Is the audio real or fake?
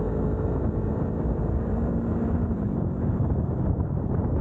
fake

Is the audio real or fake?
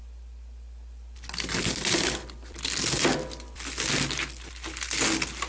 real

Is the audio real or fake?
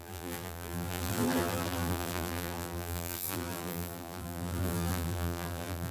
fake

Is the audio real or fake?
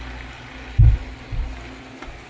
real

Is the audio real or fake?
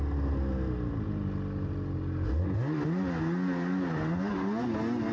real